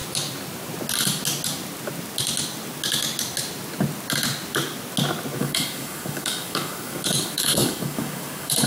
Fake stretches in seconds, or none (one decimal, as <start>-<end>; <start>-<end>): 5.4-8.7